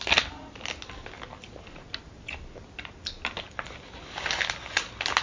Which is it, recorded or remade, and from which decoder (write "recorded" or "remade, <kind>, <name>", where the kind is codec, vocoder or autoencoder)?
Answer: recorded